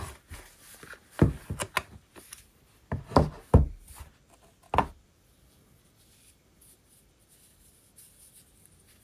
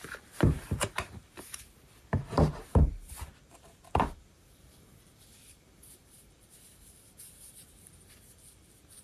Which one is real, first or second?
first